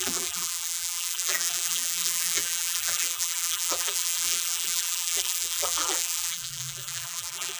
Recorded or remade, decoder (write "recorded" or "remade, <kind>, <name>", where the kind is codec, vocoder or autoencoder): remade, vocoder, BigVGAN v2